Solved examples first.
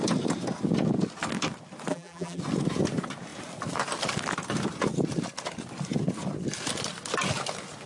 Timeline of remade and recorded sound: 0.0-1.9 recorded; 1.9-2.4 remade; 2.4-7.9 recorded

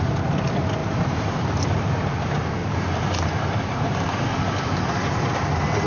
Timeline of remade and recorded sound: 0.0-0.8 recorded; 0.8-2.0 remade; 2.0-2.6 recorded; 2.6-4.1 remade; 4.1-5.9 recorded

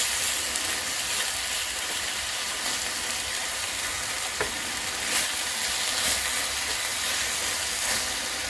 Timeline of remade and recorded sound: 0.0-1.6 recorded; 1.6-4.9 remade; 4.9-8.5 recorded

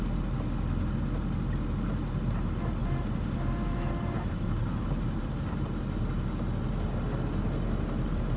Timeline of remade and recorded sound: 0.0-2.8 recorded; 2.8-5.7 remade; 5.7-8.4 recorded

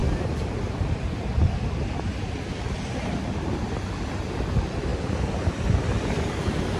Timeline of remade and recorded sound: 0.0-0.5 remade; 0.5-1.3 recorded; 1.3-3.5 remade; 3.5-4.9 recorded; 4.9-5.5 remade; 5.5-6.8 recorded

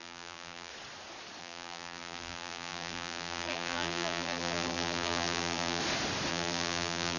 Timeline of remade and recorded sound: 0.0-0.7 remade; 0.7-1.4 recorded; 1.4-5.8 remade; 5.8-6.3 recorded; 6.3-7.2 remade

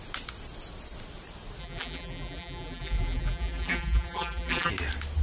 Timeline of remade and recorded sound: 0.0-1.6 recorded; 1.6-4.7 remade; 4.7-5.2 recorded